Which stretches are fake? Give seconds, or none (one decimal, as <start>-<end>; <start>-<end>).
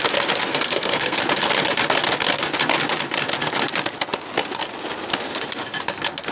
0.5-1.2